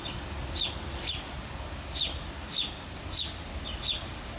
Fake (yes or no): no